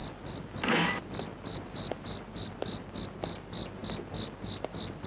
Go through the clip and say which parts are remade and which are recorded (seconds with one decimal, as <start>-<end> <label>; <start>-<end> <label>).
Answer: 0.0-5.1 recorded

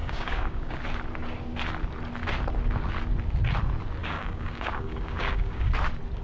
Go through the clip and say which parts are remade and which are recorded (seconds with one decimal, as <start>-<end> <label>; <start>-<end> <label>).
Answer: 0.0-0.8 remade; 0.8-4.0 recorded; 4.0-5.7 remade; 5.7-6.2 recorded

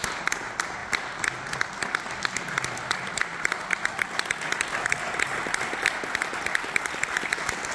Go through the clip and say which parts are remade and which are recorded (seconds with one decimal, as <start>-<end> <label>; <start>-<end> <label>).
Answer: 0.0-7.7 recorded

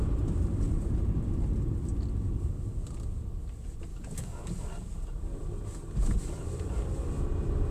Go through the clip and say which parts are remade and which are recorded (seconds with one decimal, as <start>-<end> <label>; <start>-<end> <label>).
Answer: 0.0-3.9 recorded; 3.9-4.5 remade; 4.5-7.7 recorded

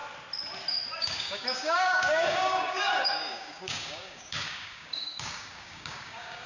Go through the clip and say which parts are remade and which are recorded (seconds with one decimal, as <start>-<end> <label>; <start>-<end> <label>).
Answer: 0.0-1.0 recorded; 1.0-6.5 remade